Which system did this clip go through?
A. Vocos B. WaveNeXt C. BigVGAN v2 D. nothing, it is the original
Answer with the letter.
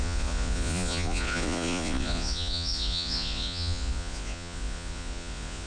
A